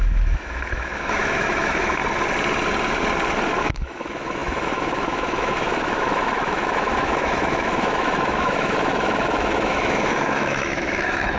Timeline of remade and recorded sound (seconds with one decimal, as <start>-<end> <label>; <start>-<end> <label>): 0.0-2.0 remade; 2.0-3.6 recorded; 3.6-11.4 remade